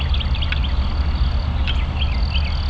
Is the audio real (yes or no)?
yes